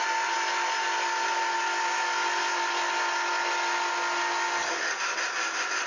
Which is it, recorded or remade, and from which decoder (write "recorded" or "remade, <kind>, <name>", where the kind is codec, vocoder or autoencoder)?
recorded